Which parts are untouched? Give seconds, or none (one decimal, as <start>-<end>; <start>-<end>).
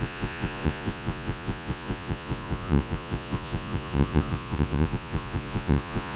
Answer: none